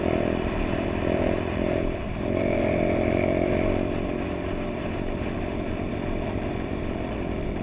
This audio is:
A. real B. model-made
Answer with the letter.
B